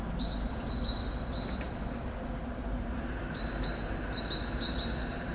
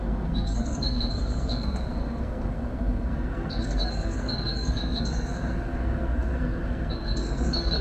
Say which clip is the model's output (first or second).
second